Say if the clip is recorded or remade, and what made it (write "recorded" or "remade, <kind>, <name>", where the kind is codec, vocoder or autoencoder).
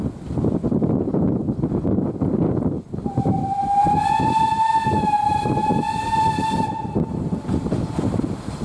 recorded